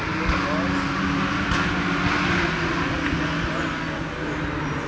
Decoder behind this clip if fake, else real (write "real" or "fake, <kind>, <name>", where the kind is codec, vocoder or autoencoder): real